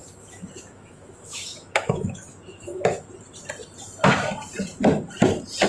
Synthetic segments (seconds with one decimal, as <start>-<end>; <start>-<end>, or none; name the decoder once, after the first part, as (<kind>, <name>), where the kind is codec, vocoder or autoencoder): 0.0-3.0 (autoencoder, DAC-VAE)